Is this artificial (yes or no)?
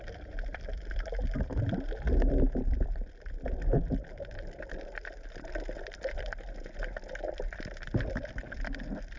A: yes